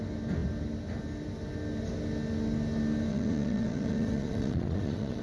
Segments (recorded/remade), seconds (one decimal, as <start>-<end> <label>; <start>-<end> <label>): 0.0-3.1 recorded; 3.1-5.2 remade